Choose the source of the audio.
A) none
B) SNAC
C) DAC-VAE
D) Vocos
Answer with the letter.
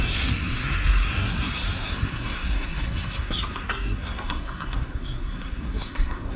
B